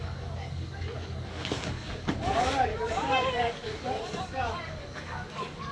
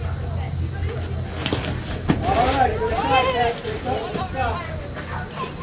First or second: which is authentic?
second